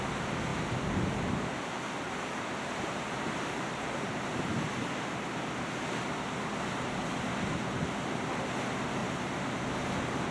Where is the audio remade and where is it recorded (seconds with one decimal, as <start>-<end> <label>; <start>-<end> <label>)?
0.0-0.5 recorded; 0.5-4.1 remade; 4.1-9.0 recorded; 9.0-9.5 remade; 9.5-10.3 recorded